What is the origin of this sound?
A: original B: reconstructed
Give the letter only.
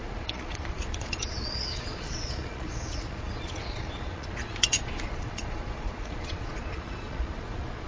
B